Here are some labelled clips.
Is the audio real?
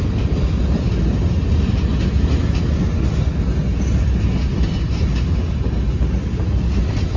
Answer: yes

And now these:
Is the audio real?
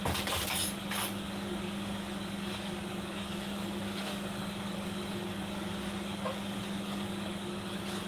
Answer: no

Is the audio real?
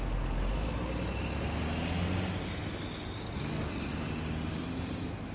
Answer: yes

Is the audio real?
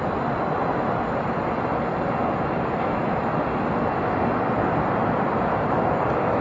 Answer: yes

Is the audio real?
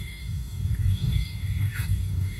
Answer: no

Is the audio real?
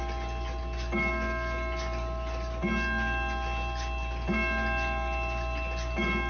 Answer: yes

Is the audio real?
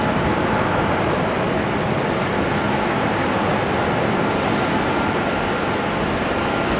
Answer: yes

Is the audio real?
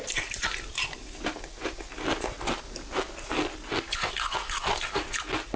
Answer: yes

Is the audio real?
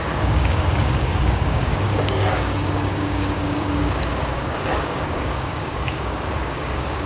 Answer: no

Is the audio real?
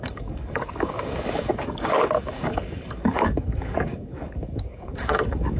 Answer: no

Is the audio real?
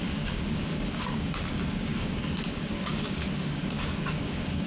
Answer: no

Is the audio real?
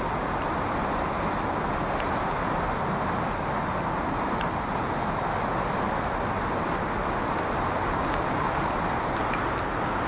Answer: yes